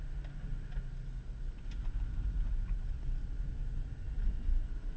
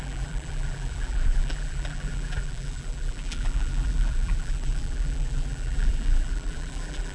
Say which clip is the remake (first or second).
second